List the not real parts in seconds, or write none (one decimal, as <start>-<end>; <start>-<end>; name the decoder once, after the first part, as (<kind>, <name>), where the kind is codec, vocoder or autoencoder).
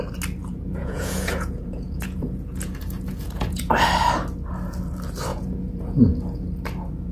0.4-3.6 (vocoder, Vocos); 5.3-6.0